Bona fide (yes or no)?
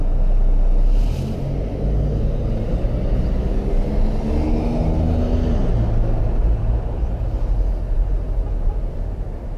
yes